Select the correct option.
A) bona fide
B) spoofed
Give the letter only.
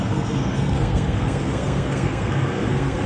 B